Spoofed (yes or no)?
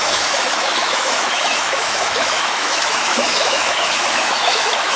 yes